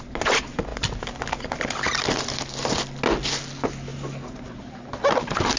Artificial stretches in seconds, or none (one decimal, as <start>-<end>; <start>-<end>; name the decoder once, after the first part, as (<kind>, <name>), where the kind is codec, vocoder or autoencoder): none